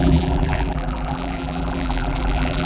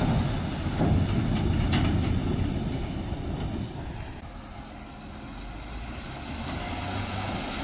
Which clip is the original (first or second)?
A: second